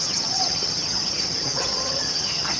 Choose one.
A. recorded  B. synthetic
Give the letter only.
B